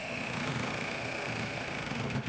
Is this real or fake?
fake